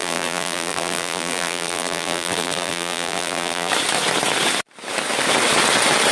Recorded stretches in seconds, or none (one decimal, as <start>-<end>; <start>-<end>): 3.7-6.1